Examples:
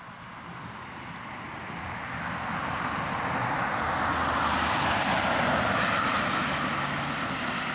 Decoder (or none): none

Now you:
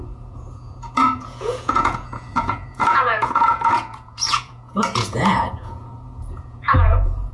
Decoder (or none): vocoder, Vocos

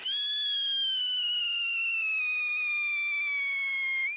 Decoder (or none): autoencoder, DAC-VAE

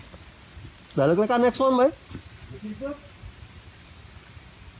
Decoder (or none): none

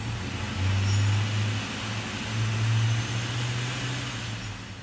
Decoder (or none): none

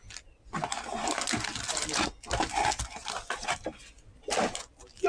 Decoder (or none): none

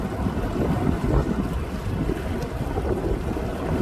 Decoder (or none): none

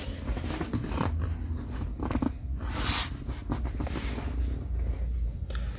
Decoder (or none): none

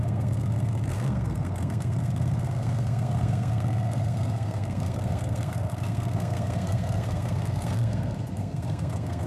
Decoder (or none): codec, SNAC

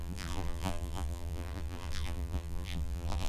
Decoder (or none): vocoder, BigVGAN v2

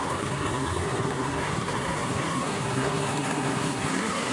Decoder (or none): codec, SNAC